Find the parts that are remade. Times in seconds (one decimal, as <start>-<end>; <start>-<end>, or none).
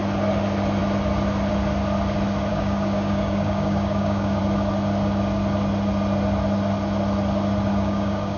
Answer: 2.5-4.4; 7.7-8.4